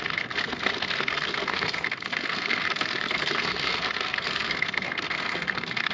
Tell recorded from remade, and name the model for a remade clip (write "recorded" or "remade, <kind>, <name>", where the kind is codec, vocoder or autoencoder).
remade, codec, SNAC